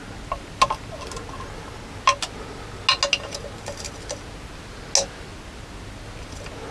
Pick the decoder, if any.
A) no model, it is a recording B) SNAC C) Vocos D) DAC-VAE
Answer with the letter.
A